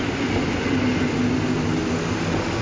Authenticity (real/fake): real